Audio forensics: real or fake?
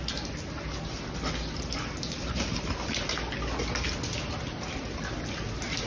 real